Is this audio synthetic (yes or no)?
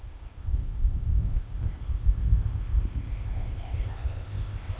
yes